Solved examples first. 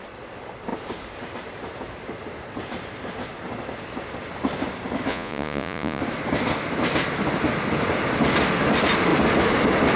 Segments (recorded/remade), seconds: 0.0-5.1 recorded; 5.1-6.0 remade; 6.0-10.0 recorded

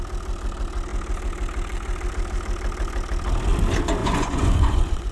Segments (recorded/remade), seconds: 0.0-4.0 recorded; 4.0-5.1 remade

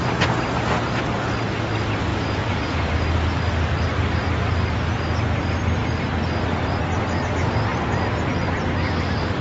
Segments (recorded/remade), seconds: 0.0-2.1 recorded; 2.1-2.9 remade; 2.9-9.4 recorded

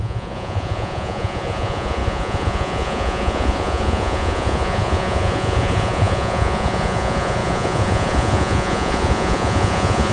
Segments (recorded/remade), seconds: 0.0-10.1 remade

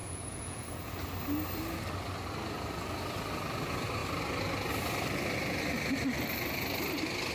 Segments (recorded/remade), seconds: 0.0-0.9 remade; 0.9-7.3 recorded

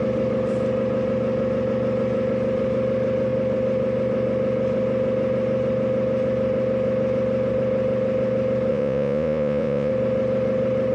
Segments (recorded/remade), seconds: 0.0-8.7 recorded; 8.7-9.9 remade; 9.9-10.9 recorded